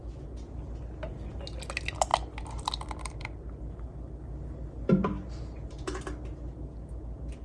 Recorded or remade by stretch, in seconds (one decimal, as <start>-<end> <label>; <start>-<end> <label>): 0.0-7.4 recorded